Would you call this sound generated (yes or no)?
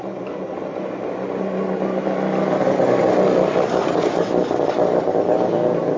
no